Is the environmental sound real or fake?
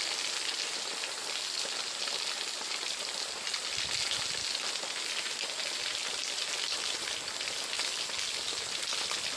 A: real